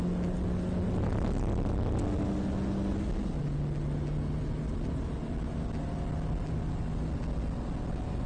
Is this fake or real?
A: real